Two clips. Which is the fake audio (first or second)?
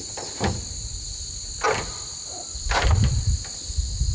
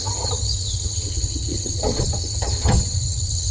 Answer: second